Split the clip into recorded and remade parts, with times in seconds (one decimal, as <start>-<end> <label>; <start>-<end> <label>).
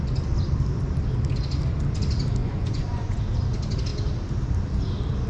0.0-2.4 recorded; 2.4-3.2 remade; 3.2-5.3 recorded